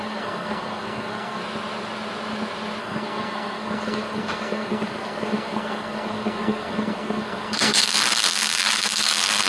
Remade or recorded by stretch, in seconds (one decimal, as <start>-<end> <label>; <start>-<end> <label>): 0.0-1.4 remade; 1.4-2.8 recorded; 2.8-9.5 remade